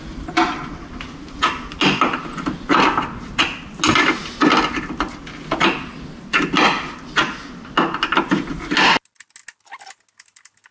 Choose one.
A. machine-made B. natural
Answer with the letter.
B